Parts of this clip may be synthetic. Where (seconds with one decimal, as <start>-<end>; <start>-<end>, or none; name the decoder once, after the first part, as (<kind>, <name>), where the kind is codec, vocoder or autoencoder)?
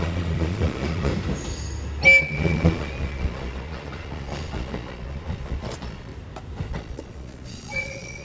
0.0-1.1 (vocoder, Vocos); 2.2-6.1; 6.7-8.2